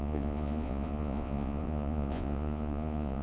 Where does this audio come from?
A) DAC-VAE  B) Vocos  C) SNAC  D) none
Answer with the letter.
B